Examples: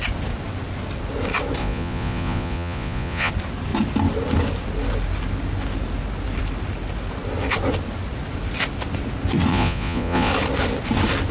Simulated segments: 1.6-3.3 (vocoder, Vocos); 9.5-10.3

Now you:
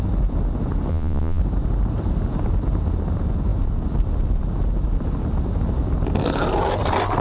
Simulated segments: 0.9-1.4 (vocoder, Vocos)